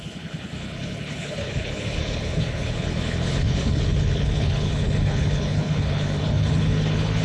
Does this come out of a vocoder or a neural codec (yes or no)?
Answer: yes